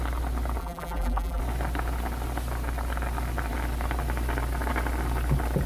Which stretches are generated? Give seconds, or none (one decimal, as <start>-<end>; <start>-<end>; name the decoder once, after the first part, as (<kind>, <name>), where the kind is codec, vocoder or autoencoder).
0.6-1.4 (vocoder, BigVGAN v2)